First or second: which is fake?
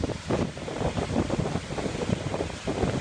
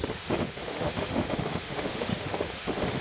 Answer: second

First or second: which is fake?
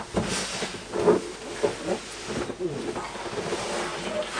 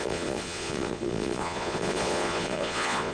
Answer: second